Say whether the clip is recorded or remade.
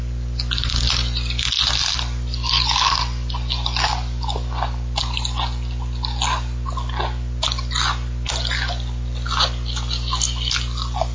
recorded